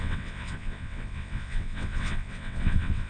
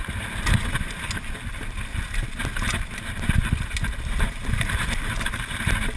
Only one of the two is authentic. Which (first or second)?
second